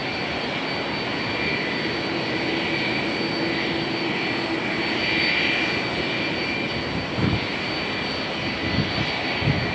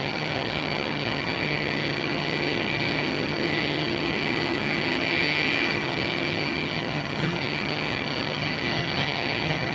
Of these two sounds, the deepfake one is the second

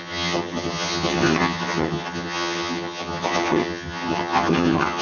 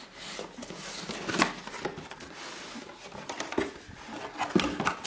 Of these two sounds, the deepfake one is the first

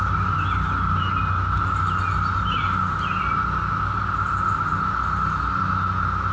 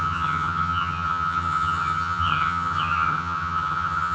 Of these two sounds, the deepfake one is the second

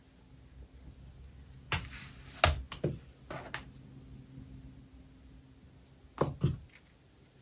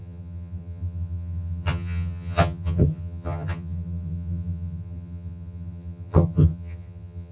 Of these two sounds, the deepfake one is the second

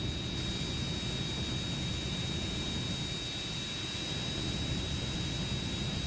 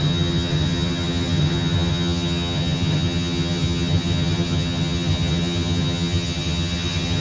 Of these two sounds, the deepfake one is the second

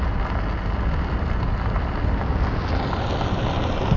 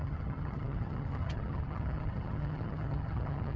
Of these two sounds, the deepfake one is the second